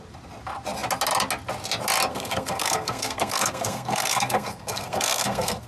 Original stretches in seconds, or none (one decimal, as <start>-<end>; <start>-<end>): 0.0-2.1